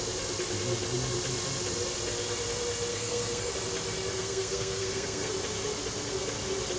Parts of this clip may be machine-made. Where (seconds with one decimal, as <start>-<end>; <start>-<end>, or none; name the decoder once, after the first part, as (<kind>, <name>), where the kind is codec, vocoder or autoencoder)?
2.9-3.5 (codec, SNAC); 4.1-5.3

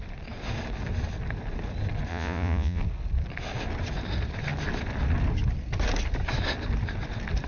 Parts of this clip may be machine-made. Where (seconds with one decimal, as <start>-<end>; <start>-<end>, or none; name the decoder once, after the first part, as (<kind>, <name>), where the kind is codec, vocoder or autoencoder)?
2.1-2.8 (vocoder, Vocos)

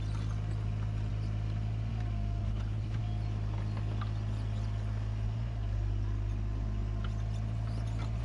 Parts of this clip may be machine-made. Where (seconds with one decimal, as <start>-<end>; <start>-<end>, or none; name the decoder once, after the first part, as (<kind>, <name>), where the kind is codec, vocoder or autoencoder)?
2.4-3.0 (codec, HILCodec)

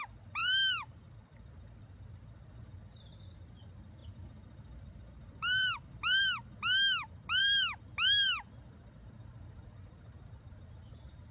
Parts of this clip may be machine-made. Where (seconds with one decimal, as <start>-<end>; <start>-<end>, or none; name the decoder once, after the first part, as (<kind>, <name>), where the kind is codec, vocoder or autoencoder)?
0.4-2.1 (vocoder, BigVGAN v2); 4.0-6.2; 7.4-9.1

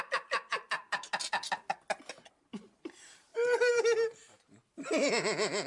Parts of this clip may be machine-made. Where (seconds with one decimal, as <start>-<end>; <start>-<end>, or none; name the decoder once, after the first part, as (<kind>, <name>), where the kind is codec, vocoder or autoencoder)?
0.0-1.1 (vocoder, BigVGAN v2); 2.3-5.7

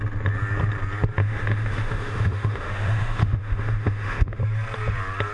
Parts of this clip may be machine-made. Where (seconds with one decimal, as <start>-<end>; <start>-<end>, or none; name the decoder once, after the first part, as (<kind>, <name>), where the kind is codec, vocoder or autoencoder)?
1.2-4.4 (autoencoder, DAC-VAE)

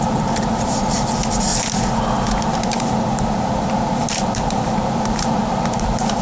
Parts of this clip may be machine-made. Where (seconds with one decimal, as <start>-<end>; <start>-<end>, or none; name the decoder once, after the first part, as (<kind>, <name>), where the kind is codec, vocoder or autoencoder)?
0.0-1.5 (vocoder, BigVGAN v2); 2.7-6.2